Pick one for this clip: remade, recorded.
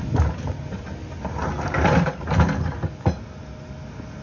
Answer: recorded